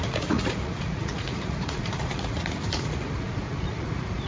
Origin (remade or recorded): remade